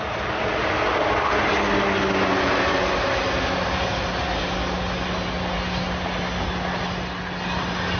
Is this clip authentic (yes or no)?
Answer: yes